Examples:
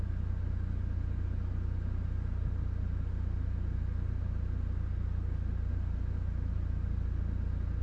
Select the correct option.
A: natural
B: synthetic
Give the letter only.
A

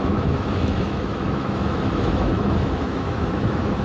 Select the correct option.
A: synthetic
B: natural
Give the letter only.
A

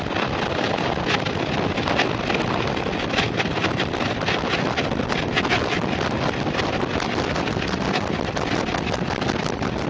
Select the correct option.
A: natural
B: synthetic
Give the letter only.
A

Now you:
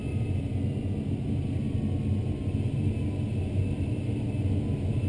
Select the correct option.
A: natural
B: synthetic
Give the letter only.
A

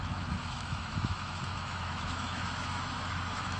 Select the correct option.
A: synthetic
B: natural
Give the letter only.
A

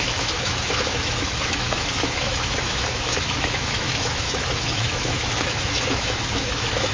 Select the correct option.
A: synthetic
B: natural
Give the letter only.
A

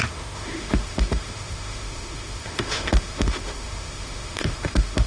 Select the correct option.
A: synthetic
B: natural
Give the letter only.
A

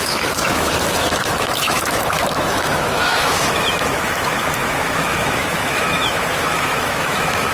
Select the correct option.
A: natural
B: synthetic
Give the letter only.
B